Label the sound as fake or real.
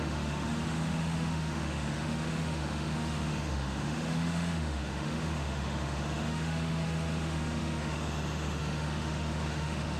fake